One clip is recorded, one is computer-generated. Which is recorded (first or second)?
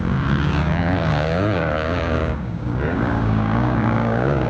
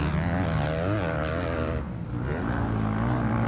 second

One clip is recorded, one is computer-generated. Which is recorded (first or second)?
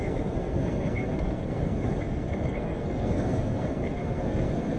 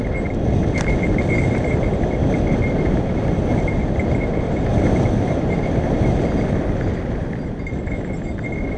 second